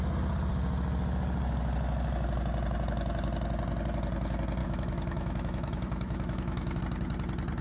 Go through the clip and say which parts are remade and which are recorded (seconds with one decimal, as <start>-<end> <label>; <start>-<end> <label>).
0.0-4.6 recorded; 4.6-6.8 remade; 6.8-7.6 recorded